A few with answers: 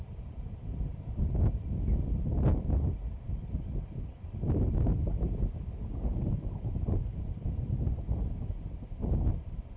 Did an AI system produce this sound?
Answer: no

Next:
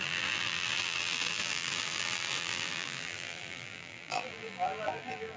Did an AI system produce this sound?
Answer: yes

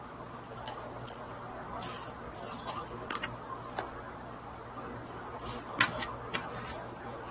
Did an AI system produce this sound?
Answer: no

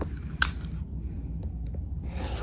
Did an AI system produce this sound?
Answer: yes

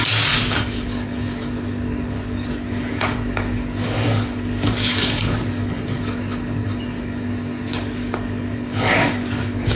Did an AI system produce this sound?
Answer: yes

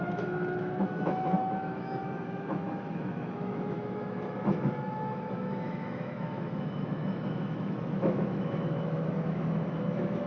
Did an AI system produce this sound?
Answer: yes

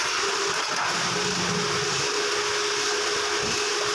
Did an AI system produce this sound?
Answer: no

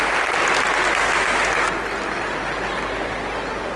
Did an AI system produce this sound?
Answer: no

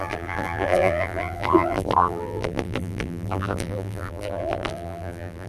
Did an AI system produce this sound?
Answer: yes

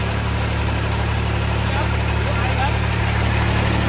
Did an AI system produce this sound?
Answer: no